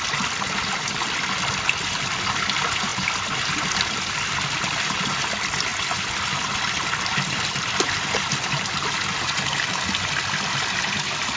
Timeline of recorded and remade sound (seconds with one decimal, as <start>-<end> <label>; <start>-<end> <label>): 0.0-11.4 recorded